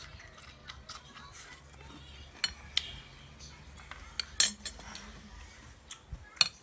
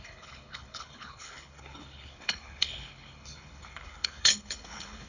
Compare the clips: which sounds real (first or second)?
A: first